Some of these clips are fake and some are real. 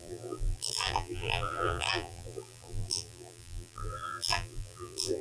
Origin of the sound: fake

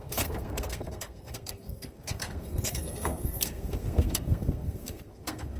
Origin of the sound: fake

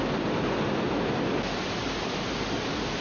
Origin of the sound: real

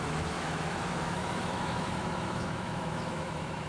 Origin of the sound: fake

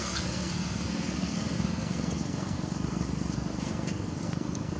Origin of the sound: fake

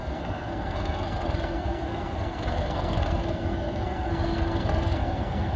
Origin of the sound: fake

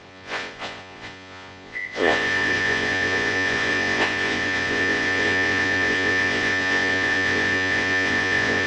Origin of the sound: fake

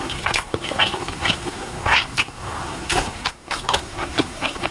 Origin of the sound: fake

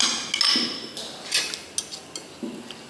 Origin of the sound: real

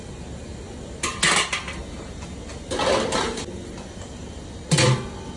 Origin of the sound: real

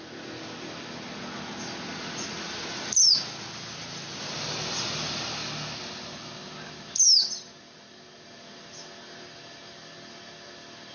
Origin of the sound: real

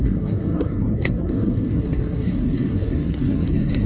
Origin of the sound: fake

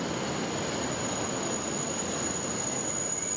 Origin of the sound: real